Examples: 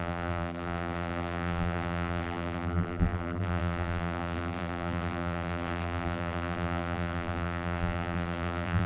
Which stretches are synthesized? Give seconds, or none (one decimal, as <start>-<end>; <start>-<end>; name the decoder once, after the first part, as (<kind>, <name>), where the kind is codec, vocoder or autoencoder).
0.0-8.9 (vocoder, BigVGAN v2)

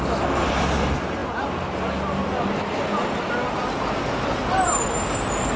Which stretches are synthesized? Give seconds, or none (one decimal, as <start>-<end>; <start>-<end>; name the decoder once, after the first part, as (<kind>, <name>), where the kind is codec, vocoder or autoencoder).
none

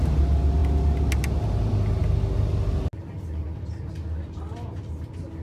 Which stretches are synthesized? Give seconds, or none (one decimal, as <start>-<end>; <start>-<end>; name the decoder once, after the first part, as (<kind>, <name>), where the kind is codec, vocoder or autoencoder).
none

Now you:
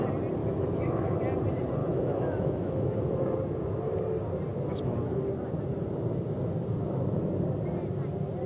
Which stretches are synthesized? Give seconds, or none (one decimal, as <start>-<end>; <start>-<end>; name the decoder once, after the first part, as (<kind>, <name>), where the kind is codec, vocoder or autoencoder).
0.4-1.2 (autoencoder, DAC-VAE); 1.8-3.1